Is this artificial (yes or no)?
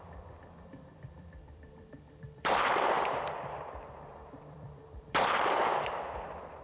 yes